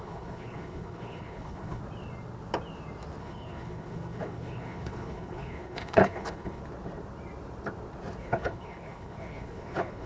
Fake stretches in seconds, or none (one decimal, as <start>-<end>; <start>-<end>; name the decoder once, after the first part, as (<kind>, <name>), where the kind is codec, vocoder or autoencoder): 0.0-1.8 (codec, HILCodec); 3.2-6.6; 8.2-10.1